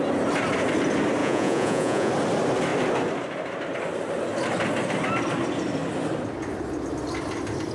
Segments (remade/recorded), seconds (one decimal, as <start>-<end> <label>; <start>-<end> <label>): 0.0-1.2 recorded; 1.2-2.1 remade; 2.1-7.7 recorded